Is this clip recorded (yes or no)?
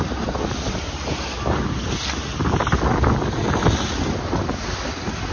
yes